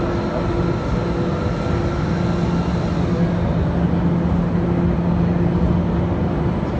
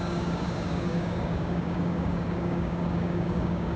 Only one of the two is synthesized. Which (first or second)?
second